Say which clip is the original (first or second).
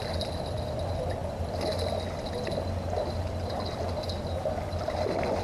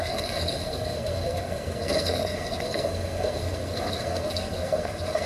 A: first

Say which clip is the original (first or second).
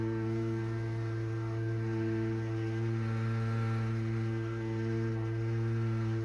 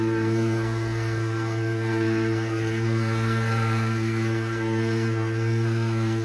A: first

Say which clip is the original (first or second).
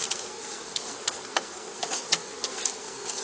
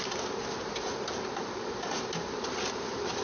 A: second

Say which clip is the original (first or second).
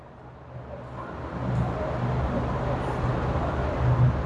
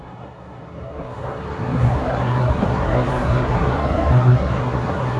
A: first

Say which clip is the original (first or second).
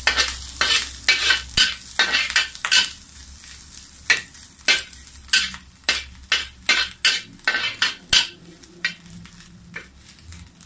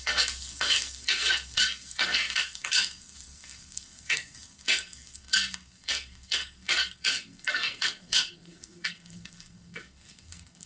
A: first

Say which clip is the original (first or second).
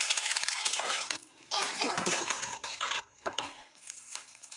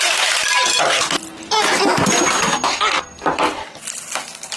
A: second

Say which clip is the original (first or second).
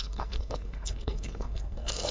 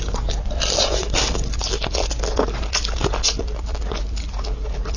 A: second